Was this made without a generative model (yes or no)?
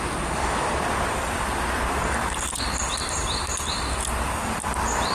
no